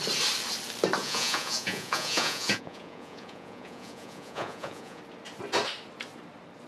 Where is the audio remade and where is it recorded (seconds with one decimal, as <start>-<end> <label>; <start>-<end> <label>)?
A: 0.0-1.0 recorded; 1.0-5.0 remade; 5.0-6.7 recorded